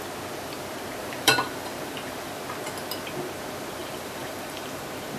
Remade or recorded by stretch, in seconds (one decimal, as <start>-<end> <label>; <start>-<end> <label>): 0.0-1.0 recorded; 1.0-2.3 remade; 2.3-3.8 recorded; 3.8-4.8 remade; 4.8-5.2 recorded